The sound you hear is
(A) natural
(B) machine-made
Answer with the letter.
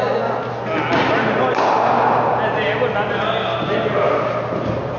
A